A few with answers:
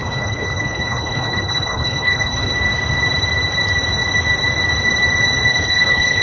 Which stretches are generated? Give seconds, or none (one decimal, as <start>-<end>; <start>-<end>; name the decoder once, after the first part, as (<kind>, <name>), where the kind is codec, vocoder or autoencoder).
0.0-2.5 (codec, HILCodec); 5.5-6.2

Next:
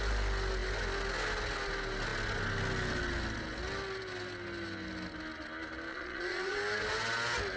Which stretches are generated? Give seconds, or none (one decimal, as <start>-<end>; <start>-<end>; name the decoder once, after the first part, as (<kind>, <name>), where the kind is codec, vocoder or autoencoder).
5.9-6.6 (vocoder, Vocos)

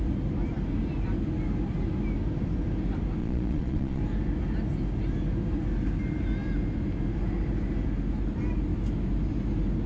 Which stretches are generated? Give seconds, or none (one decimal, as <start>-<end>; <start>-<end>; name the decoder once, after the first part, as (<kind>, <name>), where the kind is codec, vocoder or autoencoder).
3.2-4.0 (vocoder, Vocos)